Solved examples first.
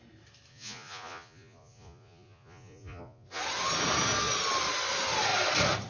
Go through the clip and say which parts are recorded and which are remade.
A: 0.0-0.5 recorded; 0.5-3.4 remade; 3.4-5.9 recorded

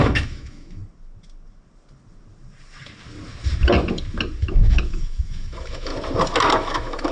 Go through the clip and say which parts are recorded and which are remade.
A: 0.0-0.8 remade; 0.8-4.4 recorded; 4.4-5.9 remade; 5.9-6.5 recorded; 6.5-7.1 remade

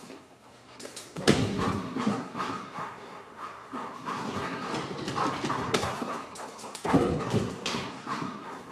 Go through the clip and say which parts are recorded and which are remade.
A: 0.0-4.7 remade; 4.7-5.5 recorded; 5.5-8.7 remade

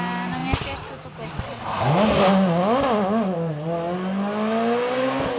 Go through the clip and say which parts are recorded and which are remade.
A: 0.0-0.4 recorded; 0.4-1.8 remade; 1.8-5.4 recorded

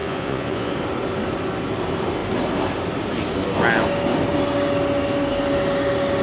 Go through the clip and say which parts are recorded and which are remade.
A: 0.0-0.7 remade; 0.7-6.2 recorded

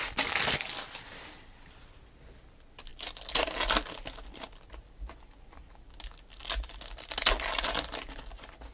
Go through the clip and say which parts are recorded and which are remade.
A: 0.0-8.7 recorded

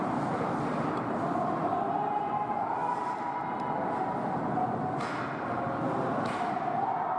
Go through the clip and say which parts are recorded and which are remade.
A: 0.0-7.2 recorded

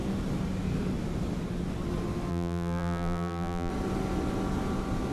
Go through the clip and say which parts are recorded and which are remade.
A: 0.0-2.3 recorded; 2.3-3.7 remade; 3.7-5.1 recorded